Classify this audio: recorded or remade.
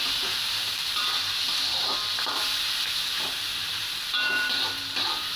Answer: remade